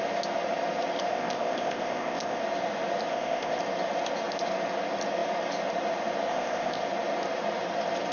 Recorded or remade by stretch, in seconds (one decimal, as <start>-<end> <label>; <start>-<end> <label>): 0.0-1.1 recorded; 1.1-2.4 remade; 2.4-3.1 recorded; 3.1-3.6 remade; 3.6-6.3 recorded; 6.3-6.8 remade; 6.8-8.1 recorded